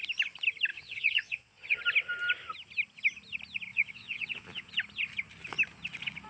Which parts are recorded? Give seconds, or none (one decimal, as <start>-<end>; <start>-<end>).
0.0-0.7; 1.8-3.7; 4.7-6.3

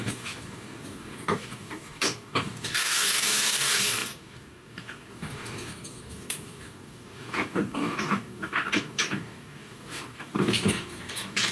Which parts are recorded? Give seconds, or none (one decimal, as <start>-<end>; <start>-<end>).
none

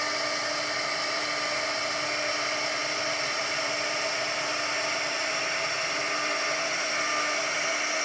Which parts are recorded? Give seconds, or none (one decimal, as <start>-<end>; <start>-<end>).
0.0-2.8; 4.2-8.0

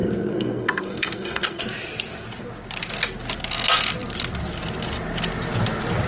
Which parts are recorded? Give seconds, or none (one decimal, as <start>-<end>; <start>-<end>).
1.6-6.1

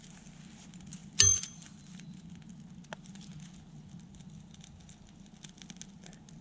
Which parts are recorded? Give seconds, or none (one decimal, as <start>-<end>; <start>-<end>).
0.0-4.1; 5.3-6.4

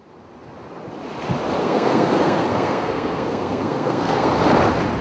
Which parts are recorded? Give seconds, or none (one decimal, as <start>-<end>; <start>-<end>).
0.0-1.6; 4.3-5.0